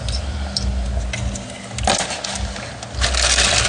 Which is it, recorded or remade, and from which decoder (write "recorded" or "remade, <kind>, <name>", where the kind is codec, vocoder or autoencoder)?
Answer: recorded